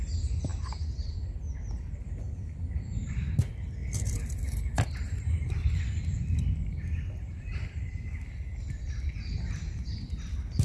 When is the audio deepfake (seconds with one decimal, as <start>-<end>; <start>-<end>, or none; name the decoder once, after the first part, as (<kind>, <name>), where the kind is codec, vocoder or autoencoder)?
none